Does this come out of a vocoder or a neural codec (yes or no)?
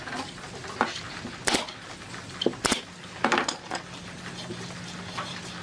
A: no